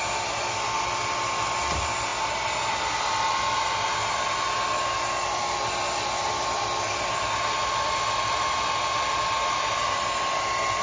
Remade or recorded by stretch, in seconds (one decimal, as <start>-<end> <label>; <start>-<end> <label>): 0.0-10.8 recorded